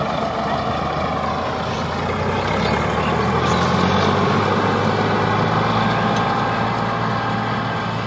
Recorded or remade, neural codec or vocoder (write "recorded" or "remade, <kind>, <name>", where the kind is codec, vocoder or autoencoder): recorded